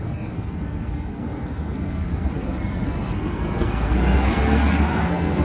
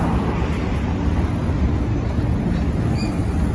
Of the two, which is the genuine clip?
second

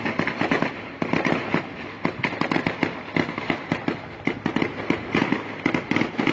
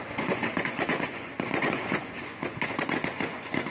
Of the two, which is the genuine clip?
first